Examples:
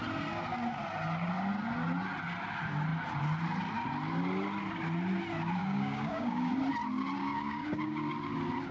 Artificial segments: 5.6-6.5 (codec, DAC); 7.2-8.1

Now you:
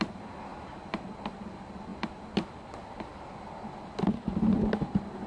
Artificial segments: none